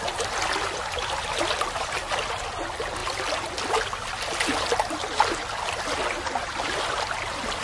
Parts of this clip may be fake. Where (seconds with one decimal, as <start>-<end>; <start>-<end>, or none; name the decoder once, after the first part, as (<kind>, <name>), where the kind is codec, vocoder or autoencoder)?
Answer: none